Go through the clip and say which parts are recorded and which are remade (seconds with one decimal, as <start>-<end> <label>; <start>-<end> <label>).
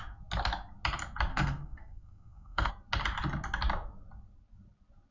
0.0-1.3 recorded; 1.3-2.7 remade; 2.7-5.1 recorded